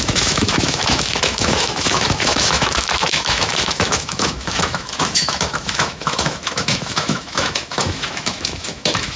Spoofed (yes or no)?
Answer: yes